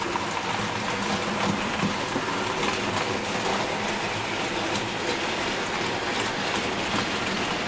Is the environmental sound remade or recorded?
recorded